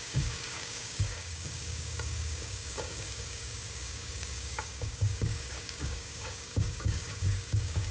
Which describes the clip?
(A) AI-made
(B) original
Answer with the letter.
A